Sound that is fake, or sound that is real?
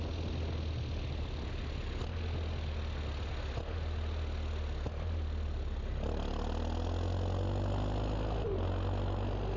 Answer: real